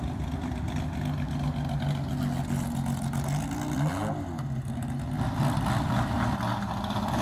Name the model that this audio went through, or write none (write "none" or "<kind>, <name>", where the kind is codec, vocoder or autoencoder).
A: none